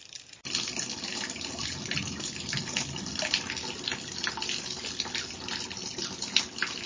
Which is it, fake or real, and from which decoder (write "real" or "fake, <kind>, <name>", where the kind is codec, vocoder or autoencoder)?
real